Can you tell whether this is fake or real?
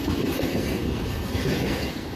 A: fake